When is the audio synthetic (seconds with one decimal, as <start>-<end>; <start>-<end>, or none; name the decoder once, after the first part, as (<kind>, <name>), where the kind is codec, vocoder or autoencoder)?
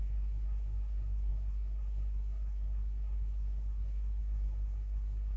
0.0-5.4 (codec, SNAC)